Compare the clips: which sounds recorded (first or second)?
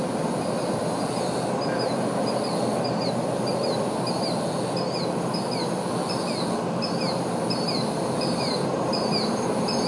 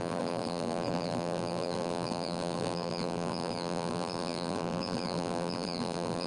first